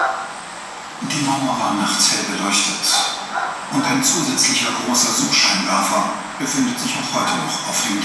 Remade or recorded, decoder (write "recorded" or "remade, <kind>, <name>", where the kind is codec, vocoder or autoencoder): remade, vocoder, Vocos